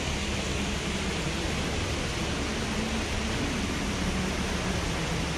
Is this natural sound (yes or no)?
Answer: yes